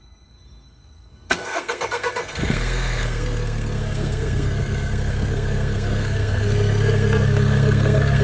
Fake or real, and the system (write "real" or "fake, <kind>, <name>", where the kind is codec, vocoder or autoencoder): fake, codec, SNAC